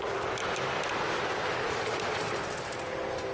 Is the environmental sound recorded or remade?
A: recorded